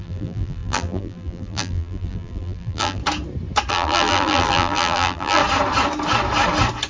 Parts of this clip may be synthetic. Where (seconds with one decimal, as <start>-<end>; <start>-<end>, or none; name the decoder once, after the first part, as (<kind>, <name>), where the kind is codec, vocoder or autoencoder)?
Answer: 0.0-3.0 (vocoder, BigVGAN v2); 3.7-5.4